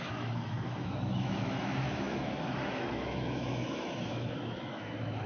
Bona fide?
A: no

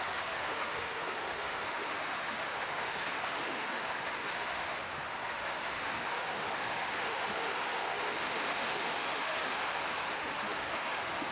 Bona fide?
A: no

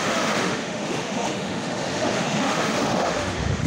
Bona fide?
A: no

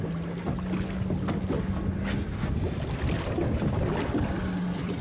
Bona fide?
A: yes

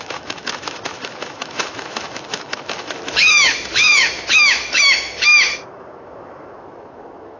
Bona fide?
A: no